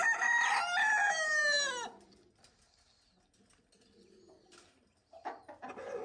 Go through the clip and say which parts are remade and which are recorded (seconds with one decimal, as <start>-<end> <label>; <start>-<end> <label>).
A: 0.0-6.0 recorded